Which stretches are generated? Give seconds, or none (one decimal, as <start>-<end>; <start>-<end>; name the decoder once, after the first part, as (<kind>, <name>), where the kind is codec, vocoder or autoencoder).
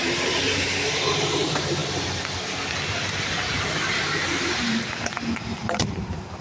0.0-1.8 (vocoder, BigVGAN v2); 3.9-5.1; 5.6-6.4